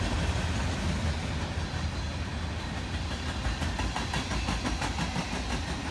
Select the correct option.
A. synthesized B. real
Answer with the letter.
B